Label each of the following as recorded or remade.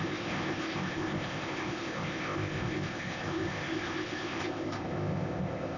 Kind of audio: remade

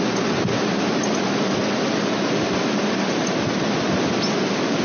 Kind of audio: recorded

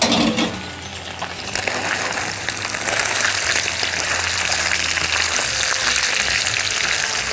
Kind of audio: recorded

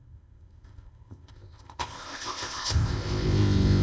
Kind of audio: remade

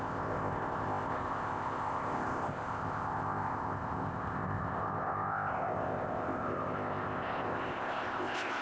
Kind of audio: remade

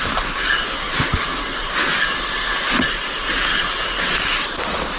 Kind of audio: recorded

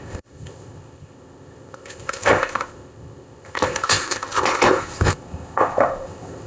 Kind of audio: remade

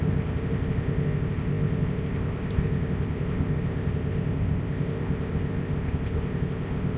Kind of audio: remade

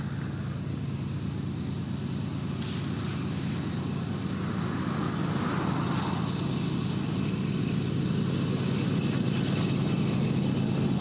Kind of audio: recorded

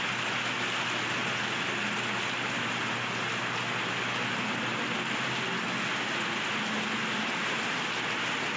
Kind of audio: recorded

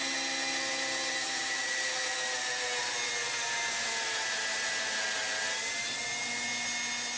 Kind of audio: recorded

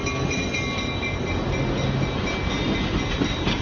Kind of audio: recorded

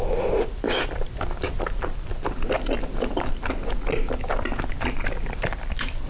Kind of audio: recorded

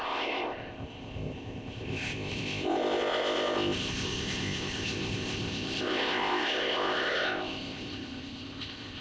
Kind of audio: remade